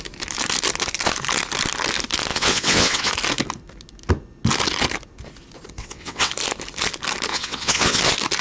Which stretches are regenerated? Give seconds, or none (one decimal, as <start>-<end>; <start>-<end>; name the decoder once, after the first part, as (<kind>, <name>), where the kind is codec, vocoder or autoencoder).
2.3-3.1 (vocoder, WaveNeXt); 5.8-6.3; 7.3-8.0